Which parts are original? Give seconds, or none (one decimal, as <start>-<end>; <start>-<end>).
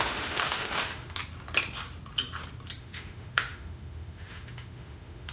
1.2-2.8